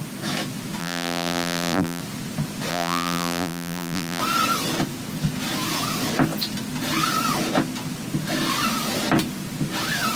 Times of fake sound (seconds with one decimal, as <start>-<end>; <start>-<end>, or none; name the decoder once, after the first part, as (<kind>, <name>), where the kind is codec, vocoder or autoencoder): 0.8-2.0 (vocoder, BigVGAN v2); 2.7-4.2